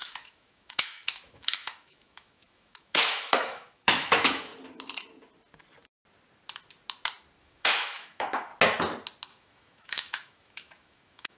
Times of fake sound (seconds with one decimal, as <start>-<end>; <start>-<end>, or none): 0.0-4.5; 7.4-8.5; 9.3-11.4